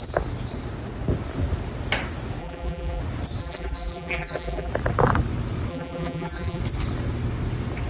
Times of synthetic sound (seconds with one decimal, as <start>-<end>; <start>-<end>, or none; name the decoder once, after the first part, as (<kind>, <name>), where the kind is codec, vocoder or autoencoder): 2.4-3.0 (vocoder, BigVGAN v2); 3.4-4.7; 5.7-6.6